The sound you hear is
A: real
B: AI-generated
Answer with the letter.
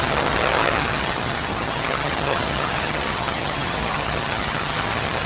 B